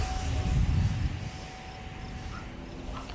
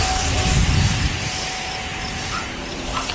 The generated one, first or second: second